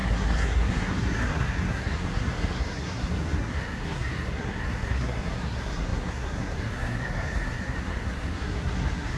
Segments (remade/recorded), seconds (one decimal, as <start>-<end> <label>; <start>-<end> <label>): 0.0-9.2 remade